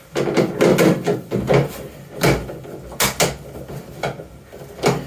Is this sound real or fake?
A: real